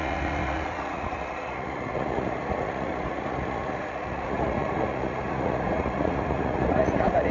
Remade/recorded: remade